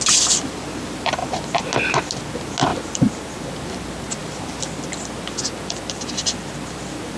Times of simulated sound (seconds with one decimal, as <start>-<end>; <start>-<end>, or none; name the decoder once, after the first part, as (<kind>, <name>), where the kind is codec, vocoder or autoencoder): 2.7-3.5 (vocoder, BigVGAN v2)